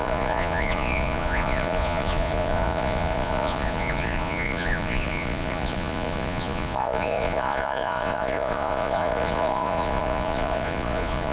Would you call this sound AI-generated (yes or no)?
yes